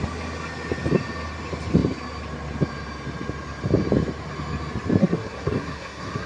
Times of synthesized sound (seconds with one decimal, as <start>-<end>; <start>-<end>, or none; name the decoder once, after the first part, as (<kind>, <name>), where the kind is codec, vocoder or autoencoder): 5.0-6.3 (codec, SNAC)